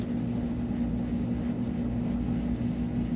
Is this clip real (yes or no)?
yes